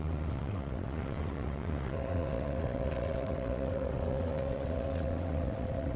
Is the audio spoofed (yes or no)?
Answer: yes